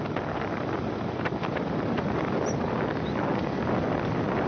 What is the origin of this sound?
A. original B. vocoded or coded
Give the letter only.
A